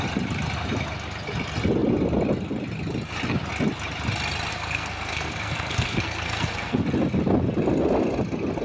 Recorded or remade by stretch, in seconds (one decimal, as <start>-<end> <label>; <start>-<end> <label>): 0.0-4.5 recorded; 4.5-6.8 remade; 6.8-8.6 recorded